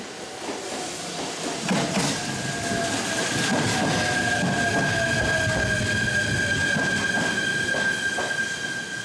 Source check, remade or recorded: recorded